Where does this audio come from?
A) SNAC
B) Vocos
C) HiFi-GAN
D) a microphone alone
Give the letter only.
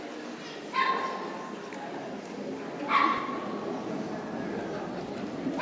D